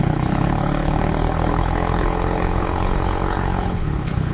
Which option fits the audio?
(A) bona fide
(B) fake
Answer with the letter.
B